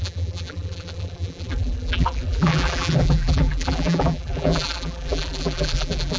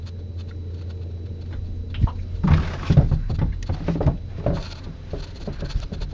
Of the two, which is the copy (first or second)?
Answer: first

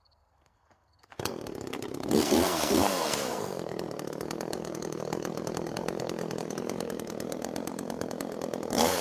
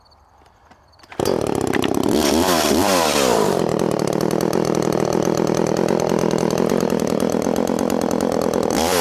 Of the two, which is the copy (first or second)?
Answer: first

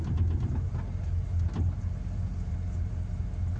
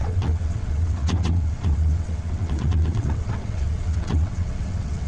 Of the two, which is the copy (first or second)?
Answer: second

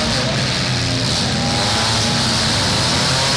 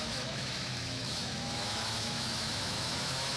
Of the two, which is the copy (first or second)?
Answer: second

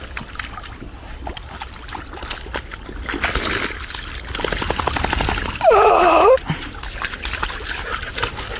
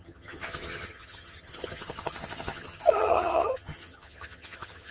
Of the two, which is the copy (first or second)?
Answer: second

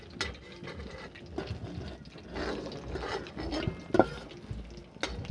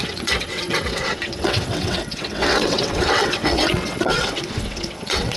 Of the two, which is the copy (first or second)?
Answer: second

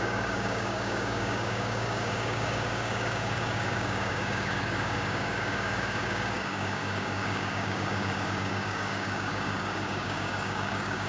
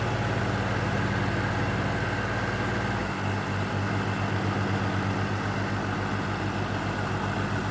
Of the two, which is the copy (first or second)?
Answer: first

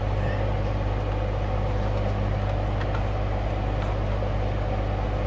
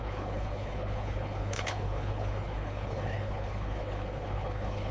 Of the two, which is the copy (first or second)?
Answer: second